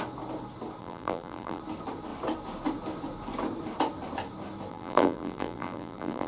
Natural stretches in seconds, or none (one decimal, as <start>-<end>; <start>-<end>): 0.0-0.8; 1.6-4.7